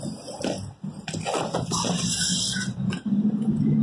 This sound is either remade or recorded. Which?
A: recorded